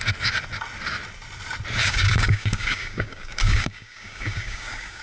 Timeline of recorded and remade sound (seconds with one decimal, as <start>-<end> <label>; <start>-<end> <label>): 0.0-1.8 recorded; 1.8-5.0 remade